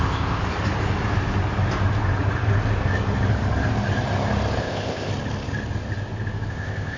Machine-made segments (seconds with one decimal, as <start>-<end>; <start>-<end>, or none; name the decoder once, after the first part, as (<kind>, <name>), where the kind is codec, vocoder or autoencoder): 0.0-0.4 (codec, ZipCodec); 4.6-5.1; 6.5-7.0